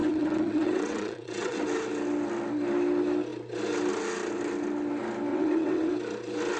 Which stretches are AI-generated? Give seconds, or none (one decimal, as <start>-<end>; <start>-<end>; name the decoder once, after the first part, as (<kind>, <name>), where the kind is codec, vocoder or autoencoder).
0.0-1.6 (vocoder, WaveNeXt); 5.3-5.9